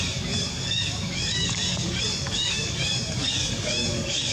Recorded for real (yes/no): no